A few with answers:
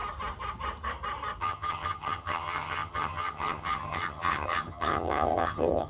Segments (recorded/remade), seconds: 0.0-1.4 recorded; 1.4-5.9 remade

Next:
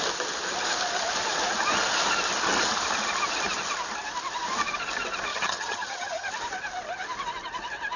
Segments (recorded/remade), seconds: 0.0-5.3 recorded; 5.3-6.3 remade; 6.3-8.0 recorded

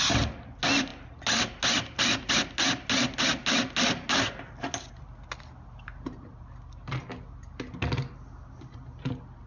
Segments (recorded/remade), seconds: 0.0-9.5 recorded